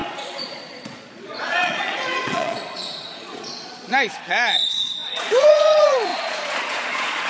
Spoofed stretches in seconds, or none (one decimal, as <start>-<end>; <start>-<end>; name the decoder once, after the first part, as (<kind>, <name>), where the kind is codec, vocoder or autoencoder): 0.0-7.3 (vocoder, Vocos)